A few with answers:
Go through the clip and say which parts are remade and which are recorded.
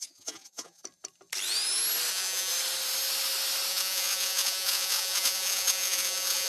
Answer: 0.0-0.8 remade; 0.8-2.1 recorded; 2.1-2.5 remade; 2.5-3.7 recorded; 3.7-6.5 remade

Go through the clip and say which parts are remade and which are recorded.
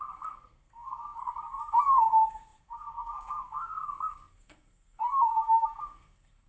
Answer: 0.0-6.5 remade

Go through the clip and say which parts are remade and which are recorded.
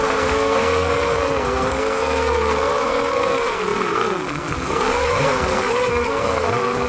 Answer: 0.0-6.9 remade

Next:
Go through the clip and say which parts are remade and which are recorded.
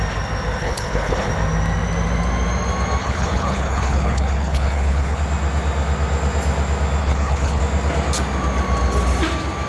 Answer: 0.0-0.6 recorded; 0.6-1.3 remade; 1.3-3.0 recorded; 3.0-5.2 remade; 5.2-7.0 recorded; 7.0-7.6 remade; 7.6-9.7 recorded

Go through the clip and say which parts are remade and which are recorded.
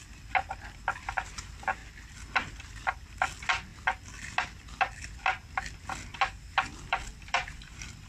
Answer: 0.0-6.7 recorded; 6.7-8.1 remade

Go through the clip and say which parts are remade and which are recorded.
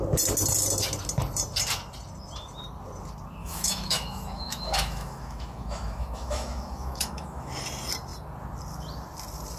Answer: 0.0-3.4 recorded; 3.4-7.5 remade; 7.5-9.6 recorded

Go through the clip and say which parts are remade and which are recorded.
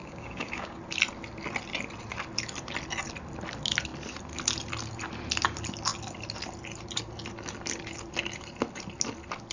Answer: 0.0-0.8 remade; 0.8-9.5 recorded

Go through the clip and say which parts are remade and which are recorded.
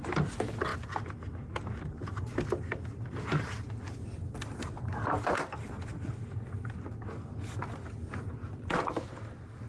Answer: 0.0-4.2 recorded; 4.2-5.4 remade; 5.4-9.7 recorded